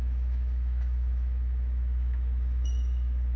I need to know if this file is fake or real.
fake